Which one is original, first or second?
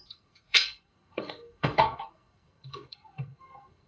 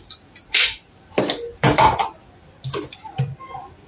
second